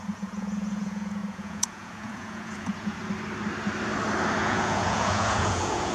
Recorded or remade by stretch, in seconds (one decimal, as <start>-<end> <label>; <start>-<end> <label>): 0.0-3.0 remade; 3.0-4.4 recorded; 4.4-5.9 remade